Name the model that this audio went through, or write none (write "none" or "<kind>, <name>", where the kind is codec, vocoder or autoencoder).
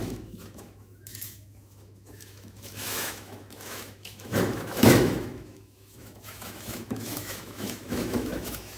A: autoencoder, DAC-VAE